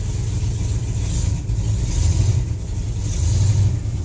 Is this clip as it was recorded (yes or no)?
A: yes